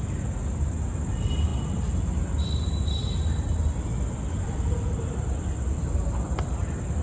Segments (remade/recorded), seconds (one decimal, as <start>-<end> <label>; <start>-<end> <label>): 0.0-7.0 recorded